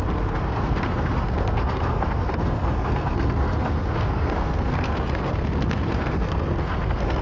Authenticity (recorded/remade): remade